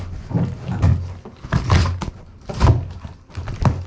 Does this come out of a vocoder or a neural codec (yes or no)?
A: no